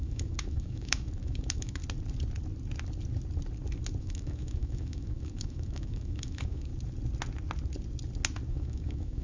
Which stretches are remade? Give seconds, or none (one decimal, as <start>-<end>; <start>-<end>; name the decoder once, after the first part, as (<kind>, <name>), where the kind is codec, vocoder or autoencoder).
0.0-1.8 (autoencoder, DAC-VAE); 4.0-6.7; 8.5-9.2